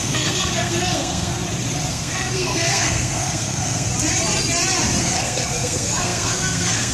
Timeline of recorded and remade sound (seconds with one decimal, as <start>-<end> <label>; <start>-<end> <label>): 0.0-1.3 remade; 1.3-1.9 recorded; 1.9-3.9 remade; 3.9-5.0 recorded; 5.0-6.9 remade

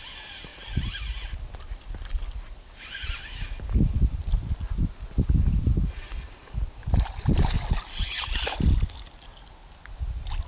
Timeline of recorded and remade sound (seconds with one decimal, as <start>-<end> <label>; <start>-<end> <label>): 0.0-0.5 recorded; 0.5-1.3 remade; 1.3-10.5 recorded

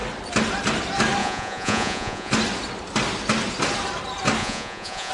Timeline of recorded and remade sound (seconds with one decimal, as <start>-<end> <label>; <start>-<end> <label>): 0.0-1.2 recorded; 1.2-2.3 remade; 2.3-4.4 recorded; 4.4-5.1 remade

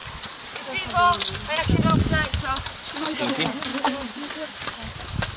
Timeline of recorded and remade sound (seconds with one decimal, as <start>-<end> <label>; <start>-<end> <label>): 0.0-5.4 recorded